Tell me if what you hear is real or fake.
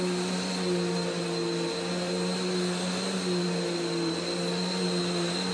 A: real